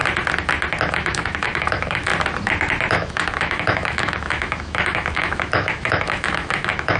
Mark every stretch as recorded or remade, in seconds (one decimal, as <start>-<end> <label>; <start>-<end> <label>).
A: 0.0-0.9 recorded; 0.9-2.1 remade; 2.1-2.9 recorded; 2.9-7.0 remade